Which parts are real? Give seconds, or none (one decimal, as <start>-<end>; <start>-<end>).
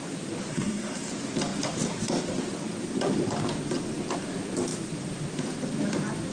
0.0-0.5; 1.1-6.3